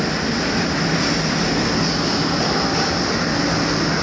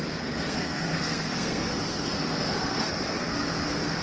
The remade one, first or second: second